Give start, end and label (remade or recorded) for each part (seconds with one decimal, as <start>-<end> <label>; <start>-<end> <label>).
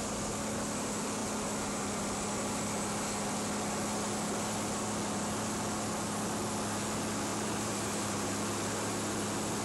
0.0-7.3 recorded; 7.3-8.3 remade; 8.3-9.6 recorded